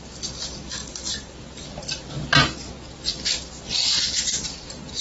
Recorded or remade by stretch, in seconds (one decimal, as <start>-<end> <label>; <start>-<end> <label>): 0.0-0.8 recorded; 0.8-1.6 remade; 1.6-3.1 recorded; 3.1-5.0 remade